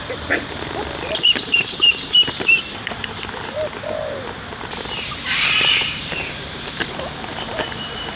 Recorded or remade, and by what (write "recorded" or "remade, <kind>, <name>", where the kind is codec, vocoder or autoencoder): remade, vocoder, BigVGAN v2